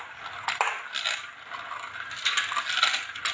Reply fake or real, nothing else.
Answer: real